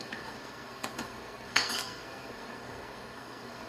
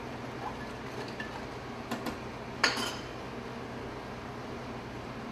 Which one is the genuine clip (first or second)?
second